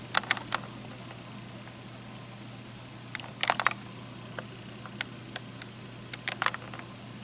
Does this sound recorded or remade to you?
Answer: recorded